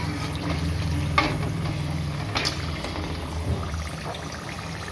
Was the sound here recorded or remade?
recorded